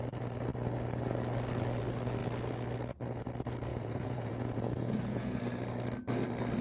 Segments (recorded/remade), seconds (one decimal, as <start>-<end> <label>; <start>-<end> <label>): 0.0-3.7 recorded; 3.7-5.4 remade; 5.4-6.6 recorded